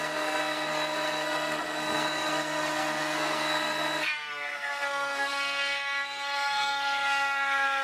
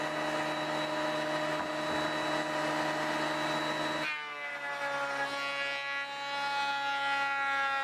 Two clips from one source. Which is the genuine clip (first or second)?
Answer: second